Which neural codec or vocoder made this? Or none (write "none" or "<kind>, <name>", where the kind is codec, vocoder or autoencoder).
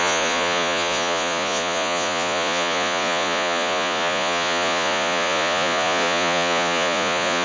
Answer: vocoder, Vocos